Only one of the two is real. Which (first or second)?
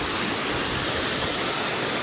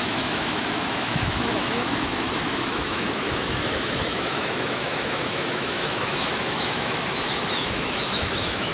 first